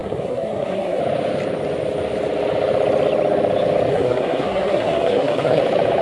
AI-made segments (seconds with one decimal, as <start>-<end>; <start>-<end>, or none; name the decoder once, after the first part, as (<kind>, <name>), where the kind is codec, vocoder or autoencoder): 0.0-1.0 (codec, SNAC); 3.9-5.6